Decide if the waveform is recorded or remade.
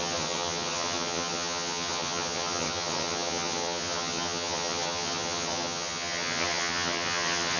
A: remade